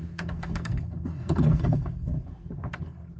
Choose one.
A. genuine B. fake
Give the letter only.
B